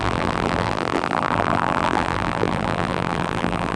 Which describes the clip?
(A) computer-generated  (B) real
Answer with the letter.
A